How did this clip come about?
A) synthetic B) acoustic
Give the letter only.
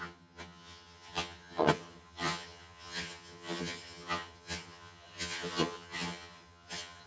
A